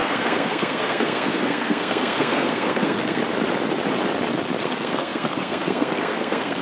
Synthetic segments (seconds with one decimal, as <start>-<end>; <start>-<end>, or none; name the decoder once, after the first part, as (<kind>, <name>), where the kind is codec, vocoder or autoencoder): 0.0-3.2 (codec, SNAC); 4.6-6.6